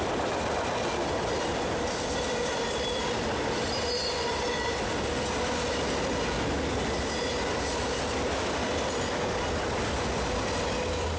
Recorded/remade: recorded